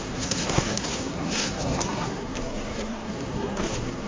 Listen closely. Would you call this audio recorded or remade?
remade